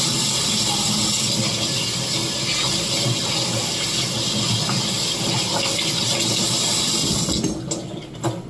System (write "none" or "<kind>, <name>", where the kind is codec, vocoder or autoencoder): none